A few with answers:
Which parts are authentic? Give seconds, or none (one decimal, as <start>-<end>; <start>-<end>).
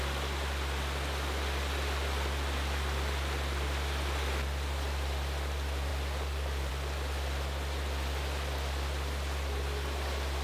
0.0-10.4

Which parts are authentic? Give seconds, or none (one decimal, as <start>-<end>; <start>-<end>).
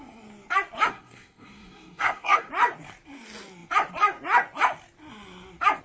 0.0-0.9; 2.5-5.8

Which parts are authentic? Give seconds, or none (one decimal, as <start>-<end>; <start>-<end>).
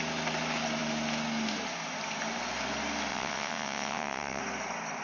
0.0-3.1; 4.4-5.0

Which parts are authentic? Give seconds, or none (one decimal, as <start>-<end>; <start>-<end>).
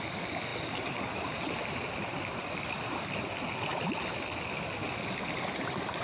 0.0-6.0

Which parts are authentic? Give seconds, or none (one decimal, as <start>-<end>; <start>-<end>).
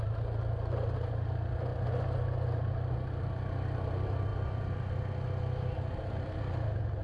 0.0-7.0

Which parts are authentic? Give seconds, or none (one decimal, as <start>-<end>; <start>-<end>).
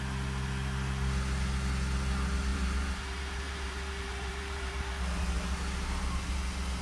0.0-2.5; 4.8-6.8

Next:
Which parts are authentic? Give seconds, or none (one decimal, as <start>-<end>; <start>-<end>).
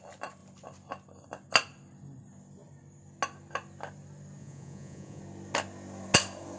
0.0-4.4; 5.2-6.6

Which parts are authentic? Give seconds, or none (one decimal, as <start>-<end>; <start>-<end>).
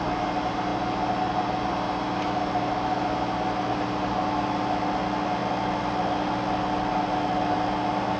0.0-8.2